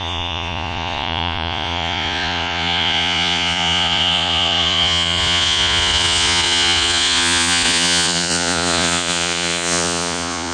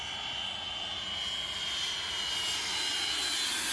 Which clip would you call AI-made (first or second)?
first